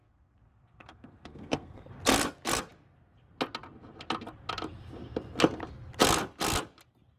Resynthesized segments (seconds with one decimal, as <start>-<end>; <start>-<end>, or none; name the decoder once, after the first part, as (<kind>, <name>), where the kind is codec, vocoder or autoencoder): 0.0-1.9 (codec, SNAC)